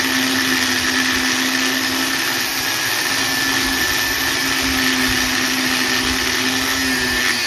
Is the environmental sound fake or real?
real